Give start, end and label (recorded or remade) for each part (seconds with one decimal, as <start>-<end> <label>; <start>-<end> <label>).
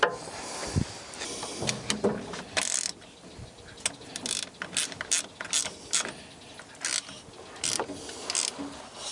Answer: 0.0-9.1 recorded